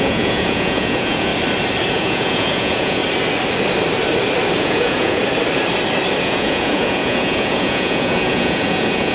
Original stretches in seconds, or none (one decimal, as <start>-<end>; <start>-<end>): 1.3-1.9; 3.0-4.6; 5.2-6.2